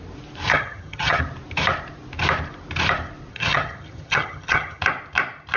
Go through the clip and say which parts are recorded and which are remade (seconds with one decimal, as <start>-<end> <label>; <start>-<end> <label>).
0.0-0.5 recorded; 0.5-1.2 remade; 1.2-3.3 recorded; 3.3-4.8 remade; 4.8-5.6 recorded